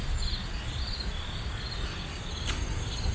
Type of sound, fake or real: real